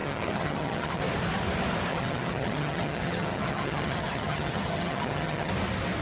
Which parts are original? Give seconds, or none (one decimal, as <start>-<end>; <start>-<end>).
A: 1.0-1.9; 5.5-6.0